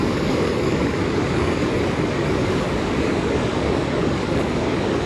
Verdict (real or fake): fake